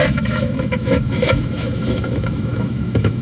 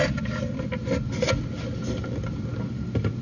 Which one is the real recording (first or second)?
second